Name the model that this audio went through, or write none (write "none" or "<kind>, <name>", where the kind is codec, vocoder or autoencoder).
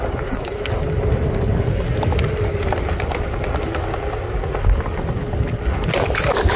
none